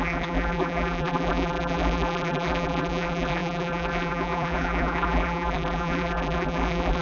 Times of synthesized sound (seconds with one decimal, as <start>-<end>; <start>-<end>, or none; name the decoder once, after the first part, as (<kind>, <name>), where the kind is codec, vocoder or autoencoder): 0.0-7.0 (vocoder, BigVGAN v2)